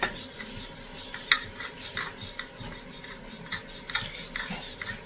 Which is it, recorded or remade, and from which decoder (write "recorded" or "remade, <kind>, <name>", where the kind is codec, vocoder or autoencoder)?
recorded